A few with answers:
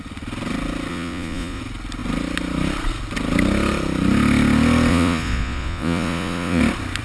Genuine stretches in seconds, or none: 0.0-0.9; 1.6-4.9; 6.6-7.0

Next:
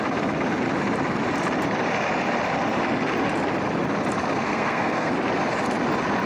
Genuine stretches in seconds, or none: 0.0-4.3; 5.1-6.3